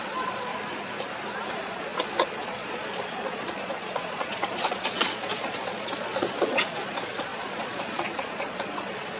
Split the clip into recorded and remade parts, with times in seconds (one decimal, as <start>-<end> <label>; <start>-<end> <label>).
0.0-0.5 remade; 0.5-1.5 recorded; 1.5-9.2 remade